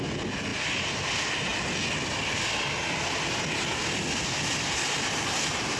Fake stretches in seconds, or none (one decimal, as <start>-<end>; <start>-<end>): none